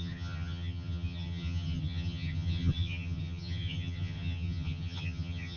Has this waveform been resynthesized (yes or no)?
yes